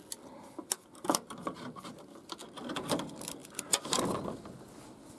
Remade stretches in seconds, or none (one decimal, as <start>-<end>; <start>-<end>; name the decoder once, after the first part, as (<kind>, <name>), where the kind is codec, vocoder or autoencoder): none